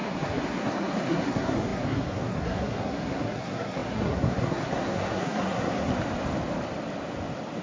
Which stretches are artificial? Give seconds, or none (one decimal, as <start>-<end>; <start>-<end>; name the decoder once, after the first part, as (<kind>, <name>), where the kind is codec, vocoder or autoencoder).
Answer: 0.0-5.9 (codec, SNAC)